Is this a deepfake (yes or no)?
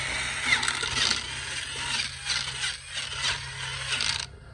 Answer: no